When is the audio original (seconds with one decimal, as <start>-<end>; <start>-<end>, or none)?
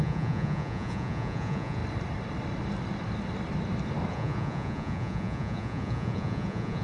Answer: 1.8-4.1